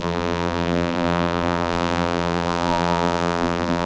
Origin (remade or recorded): remade